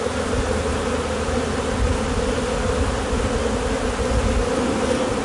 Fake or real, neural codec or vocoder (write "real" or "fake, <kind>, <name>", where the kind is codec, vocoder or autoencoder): real